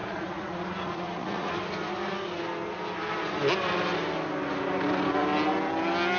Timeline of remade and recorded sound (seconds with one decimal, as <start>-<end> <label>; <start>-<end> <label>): 0.0-1.5 remade; 1.5-6.2 recorded